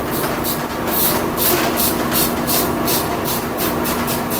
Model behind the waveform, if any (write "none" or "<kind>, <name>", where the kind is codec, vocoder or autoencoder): none